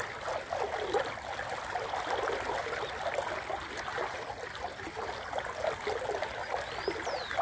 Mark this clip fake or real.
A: real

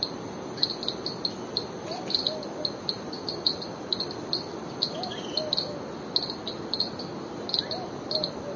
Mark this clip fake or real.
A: real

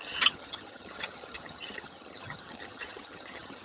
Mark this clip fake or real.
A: fake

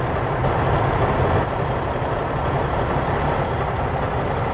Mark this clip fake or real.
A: real